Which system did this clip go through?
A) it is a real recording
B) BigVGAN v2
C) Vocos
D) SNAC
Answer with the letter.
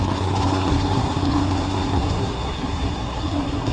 D